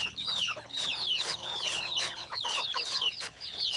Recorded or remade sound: remade